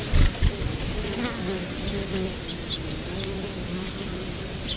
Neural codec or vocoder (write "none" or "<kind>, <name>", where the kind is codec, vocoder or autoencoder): none